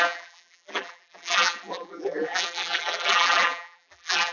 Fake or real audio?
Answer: fake